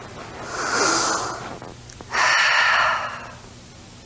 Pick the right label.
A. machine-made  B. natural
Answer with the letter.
B